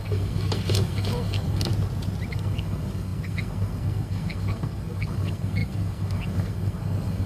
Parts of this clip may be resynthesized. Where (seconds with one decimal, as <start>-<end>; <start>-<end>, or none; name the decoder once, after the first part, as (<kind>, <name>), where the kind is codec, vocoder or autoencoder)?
0.0-1.7 (codec, SNAC); 2.3-7.3